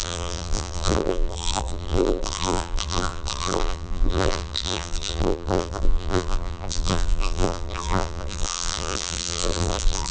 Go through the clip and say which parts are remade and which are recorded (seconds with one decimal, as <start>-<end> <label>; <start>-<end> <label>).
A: 0.0-10.1 remade

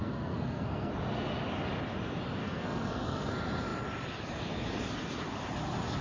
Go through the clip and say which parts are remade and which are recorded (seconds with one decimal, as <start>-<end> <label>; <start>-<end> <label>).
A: 0.0-0.9 remade; 0.9-2.4 recorded; 2.4-3.3 remade; 3.3-6.0 recorded

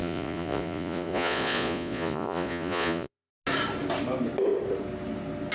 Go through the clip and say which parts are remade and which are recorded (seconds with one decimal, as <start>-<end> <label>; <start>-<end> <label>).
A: 0.0-3.3 remade; 3.3-5.5 recorded

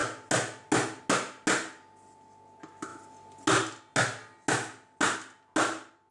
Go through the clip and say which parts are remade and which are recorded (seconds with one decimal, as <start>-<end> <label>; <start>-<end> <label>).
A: 0.0-6.1 recorded